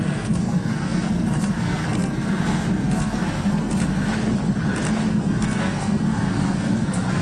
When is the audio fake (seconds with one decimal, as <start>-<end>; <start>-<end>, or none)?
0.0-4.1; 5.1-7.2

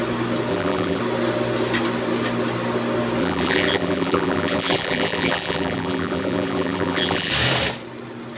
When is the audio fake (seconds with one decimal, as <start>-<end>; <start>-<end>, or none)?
0.5-1.0; 3.2-7.3

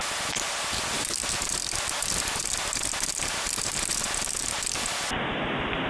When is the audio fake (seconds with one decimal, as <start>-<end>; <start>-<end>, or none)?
none